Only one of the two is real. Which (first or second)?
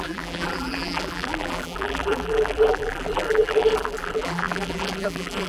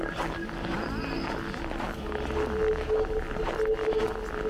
second